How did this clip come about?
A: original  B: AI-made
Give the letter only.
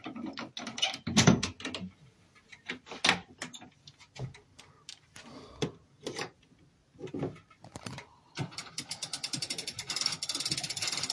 A